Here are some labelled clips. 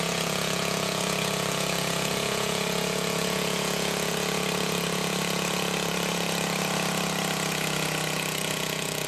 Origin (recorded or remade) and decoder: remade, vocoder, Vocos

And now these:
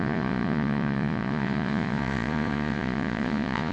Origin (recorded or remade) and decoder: remade, vocoder, Vocos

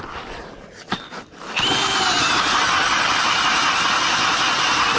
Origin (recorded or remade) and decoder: recorded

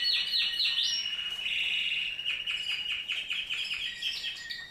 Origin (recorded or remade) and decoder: remade, vocoder, BigVGAN v2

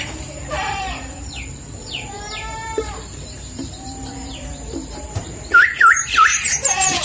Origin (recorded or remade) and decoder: remade, vocoder, BigVGAN v2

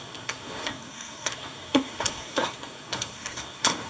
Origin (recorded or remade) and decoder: remade, codec, SNAC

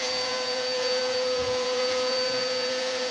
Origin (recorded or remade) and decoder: remade, vocoder, Vocos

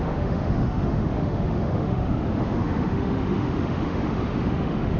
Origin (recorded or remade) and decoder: remade, autoencoder, DAC-VAE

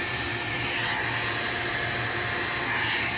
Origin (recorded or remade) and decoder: recorded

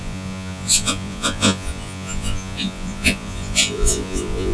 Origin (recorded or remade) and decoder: remade, vocoder, Vocos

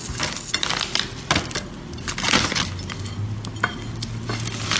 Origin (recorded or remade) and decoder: recorded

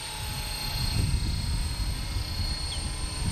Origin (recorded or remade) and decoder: recorded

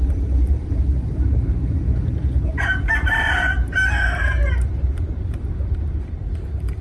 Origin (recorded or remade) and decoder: remade, vocoder, BigVGAN v2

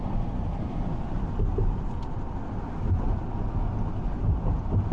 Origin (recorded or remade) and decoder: recorded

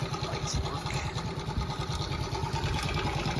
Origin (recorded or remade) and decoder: recorded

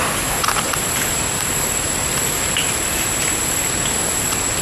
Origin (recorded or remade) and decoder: recorded